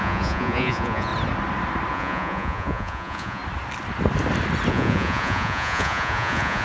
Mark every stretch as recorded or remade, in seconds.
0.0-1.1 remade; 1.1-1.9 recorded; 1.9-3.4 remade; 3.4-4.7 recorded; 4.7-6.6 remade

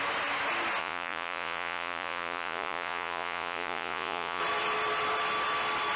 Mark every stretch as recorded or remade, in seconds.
0.0-0.8 recorded; 0.8-4.4 remade; 4.4-6.0 recorded

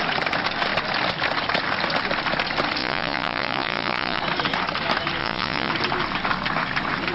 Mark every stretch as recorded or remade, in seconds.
0.0-2.8 recorded; 2.8-4.2 remade; 4.2-5.2 recorded; 5.2-5.7 remade; 5.7-7.1 recorded